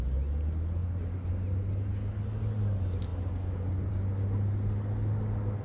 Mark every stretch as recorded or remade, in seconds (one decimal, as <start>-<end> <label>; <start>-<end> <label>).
0.0-0.8 recorded; 0.8-1.3 remade; 1.3-5.6 recorded